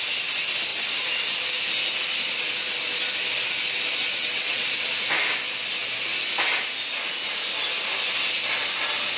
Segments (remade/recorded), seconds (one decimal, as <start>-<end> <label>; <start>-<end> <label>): 0.0-4.0 recorded; 4.0-4.7 remade; 4.7-9.2 recorded